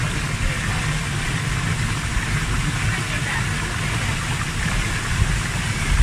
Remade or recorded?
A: recorded